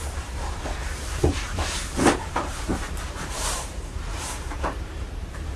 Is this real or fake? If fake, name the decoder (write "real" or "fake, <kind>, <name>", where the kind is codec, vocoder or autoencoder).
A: fake, vocoder, BigVGAN v2